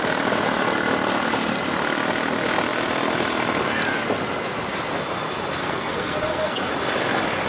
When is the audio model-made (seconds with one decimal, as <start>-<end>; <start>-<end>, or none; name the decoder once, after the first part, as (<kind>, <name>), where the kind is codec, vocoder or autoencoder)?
5.6-6.7 (codec, SNAC)